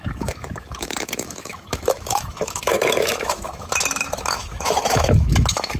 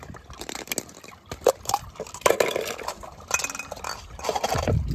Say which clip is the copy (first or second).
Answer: first